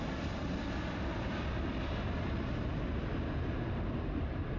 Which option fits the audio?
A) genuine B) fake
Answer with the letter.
A